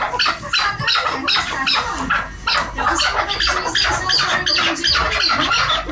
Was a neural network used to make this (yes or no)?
no